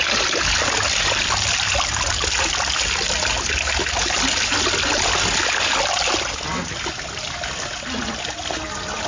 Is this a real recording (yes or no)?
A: yes